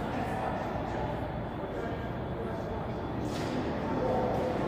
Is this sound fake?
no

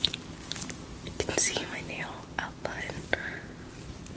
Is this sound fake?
no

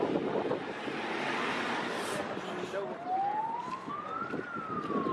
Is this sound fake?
no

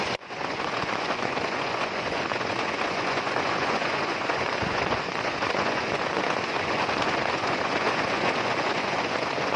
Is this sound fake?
yes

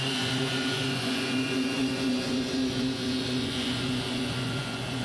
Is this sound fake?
yes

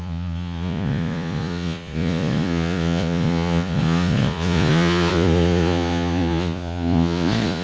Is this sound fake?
yes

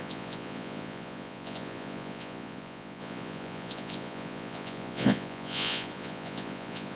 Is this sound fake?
yes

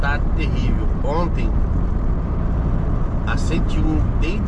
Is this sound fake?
no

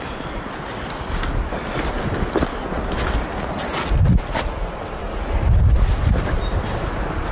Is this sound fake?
no